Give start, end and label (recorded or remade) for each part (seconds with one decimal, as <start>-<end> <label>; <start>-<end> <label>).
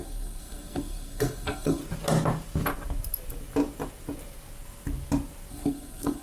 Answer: 0.0-1.8 remade; 1.8-5.5 recorded; 5.5-6.2 remade